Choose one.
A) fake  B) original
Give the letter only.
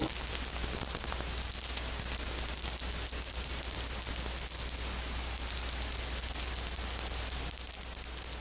B